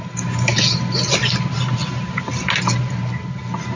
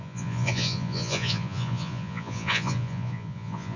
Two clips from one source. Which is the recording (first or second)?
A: first